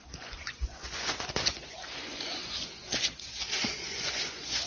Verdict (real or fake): fake